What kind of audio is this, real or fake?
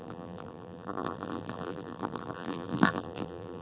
fake